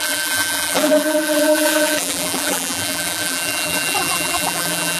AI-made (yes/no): yes